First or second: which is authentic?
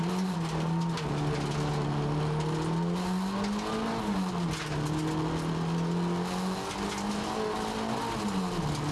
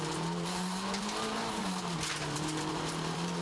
first